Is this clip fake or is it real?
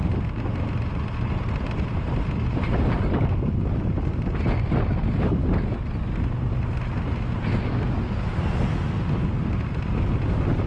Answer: real